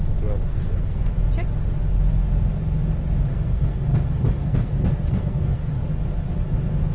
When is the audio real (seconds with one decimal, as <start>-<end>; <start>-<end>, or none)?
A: 0.0-0.5; 1.1-3.3; 5.7-6.9